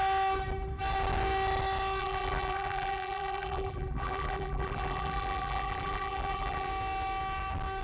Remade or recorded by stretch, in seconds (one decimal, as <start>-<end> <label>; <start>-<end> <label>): 0.0-2.0 recorded; 2.0-6.7 remade; 6.7-7.8 recorded